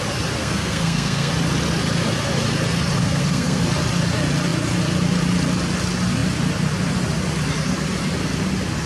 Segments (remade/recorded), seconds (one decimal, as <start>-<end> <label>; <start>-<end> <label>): 0.0-0.4 recorded; 0.4-1.3 remade; 1.3-3.0 recorded; 3.0-3.6 remade; 3.6-8.9 recorded